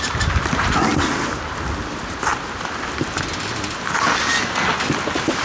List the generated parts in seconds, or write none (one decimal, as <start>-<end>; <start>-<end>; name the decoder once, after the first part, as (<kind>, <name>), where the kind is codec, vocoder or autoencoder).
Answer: 0.0-0.9 (vocoder, BigVGAN v2); 1.9-2.3